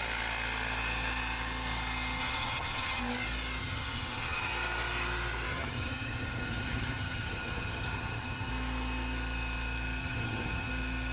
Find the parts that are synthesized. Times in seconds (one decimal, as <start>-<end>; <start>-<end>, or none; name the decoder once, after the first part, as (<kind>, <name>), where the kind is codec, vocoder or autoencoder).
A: 2.2-3.0 (vocoder, HiFi-GAN); 3.6-4.5; 5.5-8.5; 10.0-10.7